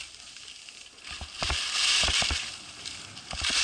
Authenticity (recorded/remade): recorded